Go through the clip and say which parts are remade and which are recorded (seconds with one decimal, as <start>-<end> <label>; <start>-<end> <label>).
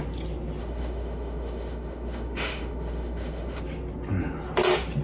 0.0-0.6 recorded; 0.6-3.6 remade; 3.6-5.0 recorded